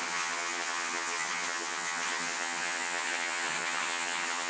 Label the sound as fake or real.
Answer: fake